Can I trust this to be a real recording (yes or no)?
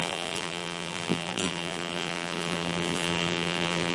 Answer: no